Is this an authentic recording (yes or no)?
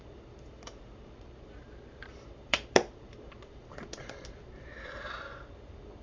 no